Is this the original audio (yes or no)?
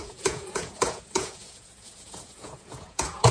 no